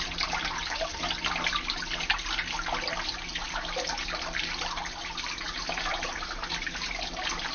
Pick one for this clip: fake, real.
real